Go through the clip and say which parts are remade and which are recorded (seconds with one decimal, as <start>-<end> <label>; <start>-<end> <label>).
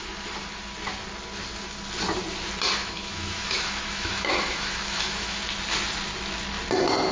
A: 0.0-2.8 recorded; 2.8-5.4 remade; 5.4-7.1 recorded